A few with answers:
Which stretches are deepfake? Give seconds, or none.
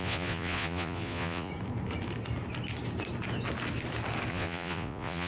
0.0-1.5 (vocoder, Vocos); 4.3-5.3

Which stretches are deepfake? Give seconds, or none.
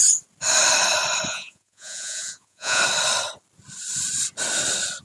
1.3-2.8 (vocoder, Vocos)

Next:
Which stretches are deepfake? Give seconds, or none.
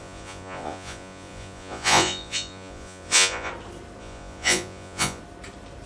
0.0-3.5 (vocoder, Vocos); 4.0-5.2